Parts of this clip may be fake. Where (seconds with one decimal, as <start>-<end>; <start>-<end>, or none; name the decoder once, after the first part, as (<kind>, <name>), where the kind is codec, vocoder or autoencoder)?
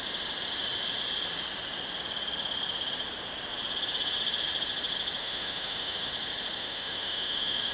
5.2-6.1 (autoencoder, DAC-VAE); 6.6-7.7